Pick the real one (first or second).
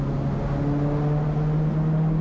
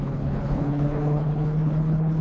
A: first